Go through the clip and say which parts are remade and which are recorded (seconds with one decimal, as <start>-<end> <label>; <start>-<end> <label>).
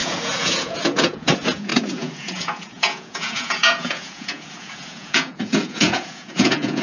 0.0-6.8 remade